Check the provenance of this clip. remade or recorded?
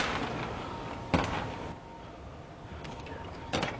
recorded